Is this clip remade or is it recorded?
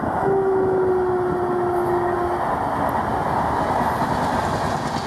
recorded